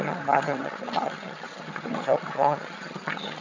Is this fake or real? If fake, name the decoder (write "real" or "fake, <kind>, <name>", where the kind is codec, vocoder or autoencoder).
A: fake, vocoder, HiFi-GAN